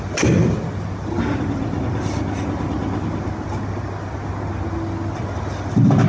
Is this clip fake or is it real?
real